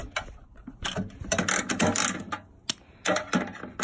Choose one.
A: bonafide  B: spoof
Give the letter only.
A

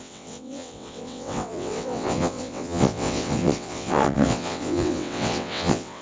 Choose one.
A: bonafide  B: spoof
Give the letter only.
B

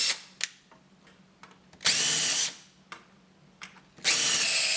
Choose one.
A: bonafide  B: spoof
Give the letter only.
A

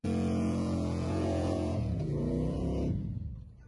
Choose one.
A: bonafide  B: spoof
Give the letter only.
B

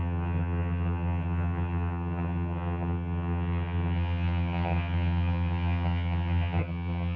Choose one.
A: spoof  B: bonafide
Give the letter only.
A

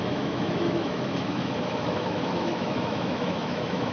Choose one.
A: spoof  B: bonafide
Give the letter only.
A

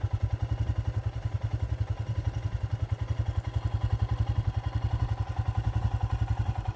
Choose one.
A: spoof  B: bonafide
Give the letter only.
B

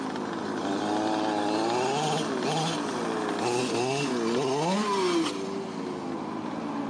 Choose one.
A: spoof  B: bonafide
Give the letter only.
B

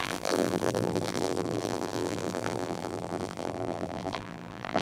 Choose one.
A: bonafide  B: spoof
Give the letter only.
B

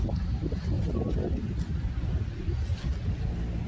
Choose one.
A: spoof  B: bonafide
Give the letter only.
B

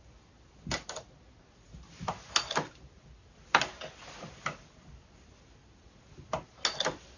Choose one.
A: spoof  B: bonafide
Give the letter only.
B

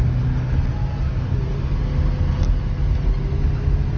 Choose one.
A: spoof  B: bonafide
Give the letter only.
B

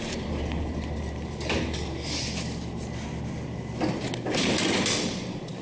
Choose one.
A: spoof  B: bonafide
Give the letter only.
B